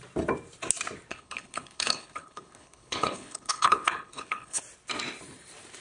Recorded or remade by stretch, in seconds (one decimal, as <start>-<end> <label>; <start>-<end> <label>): 0.0-1.1 recorded; 1.1-4.6 remade; 4.6-5.8 recorded